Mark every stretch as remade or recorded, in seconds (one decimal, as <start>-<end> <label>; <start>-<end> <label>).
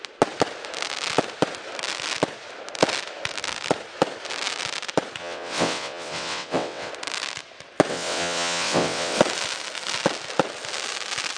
0.0-5.2 recorded; 5.2-6.9 remade; 6.9-7.9 recorded; 7.9-9.2 remade; 9.2-11.4 recorded